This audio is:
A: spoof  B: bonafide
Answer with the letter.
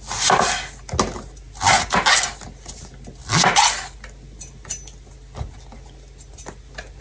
B